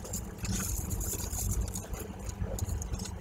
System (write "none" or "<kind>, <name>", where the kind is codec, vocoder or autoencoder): none